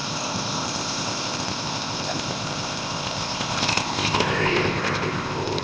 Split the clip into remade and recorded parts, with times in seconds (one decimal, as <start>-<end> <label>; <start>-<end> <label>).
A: 0.0-5.6 remade